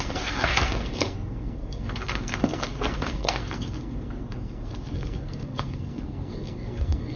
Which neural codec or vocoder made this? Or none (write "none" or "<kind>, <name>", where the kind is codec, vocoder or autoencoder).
codec, SNAC